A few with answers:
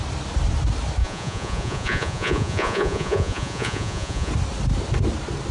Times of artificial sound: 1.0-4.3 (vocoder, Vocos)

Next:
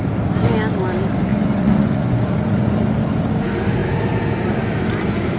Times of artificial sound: 1.3-2.9 (vocoder, Vocos)

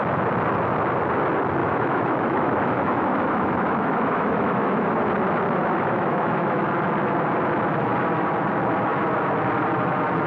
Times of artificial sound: 1.6-5.0 (autoencoder, DAC-VAE); 5.6-6.6

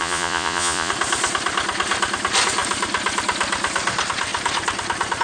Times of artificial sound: 0.0-0.9 (vocoder, Vocos)